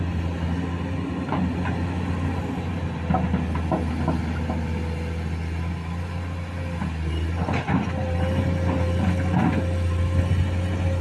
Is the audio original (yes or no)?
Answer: yes